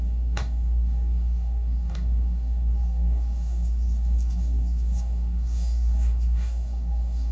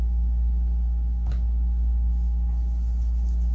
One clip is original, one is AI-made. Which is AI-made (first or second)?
first